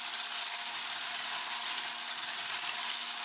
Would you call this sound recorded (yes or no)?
yes